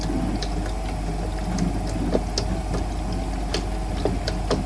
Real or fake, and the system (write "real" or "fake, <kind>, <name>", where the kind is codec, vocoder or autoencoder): real